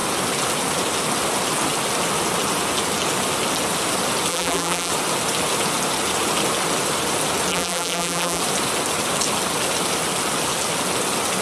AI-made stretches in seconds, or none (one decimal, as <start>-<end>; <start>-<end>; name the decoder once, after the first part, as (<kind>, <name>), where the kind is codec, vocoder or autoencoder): 4.3-4.9 (vocoder, BigVGAN v2); 7.5-8.4